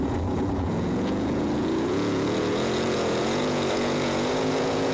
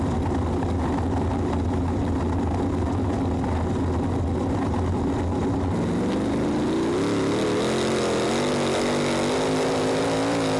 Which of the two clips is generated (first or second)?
first